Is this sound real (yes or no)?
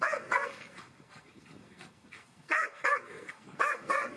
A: no